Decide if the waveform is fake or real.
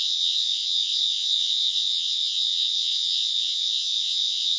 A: fake